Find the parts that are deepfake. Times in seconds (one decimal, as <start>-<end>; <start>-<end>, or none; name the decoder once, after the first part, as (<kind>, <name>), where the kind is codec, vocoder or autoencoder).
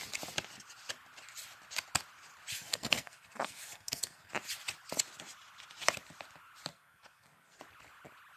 2.5-4.3 (codec, SNAC); 6.7-7.6